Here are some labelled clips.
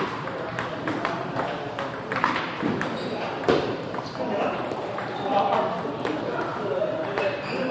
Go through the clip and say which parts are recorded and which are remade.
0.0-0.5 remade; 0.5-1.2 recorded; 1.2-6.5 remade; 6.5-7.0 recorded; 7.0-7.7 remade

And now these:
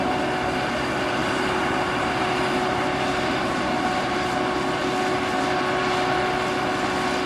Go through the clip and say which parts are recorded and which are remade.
0.0-1.2 recorded; 1.2-4.3 remade; 4.3-7.3 recorded

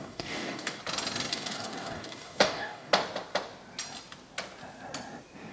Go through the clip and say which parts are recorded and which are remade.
0.0-0.8 remade; 0.8-1.3 recorded; 1.3-2.9 remade; 2.9-5.5 recorded

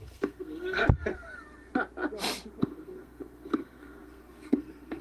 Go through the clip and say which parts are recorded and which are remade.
0.0-0.8 remade; 0.8-2.6 recorded; 2.6-5.0 remade

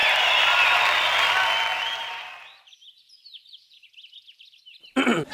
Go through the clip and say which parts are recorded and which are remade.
0.0-5.3 recorded

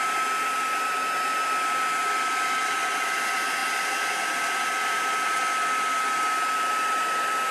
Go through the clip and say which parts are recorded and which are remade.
0.0-7.5 recorded